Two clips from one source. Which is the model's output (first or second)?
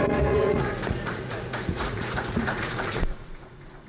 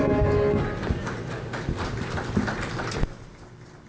first